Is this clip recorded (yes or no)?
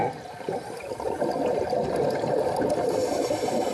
yes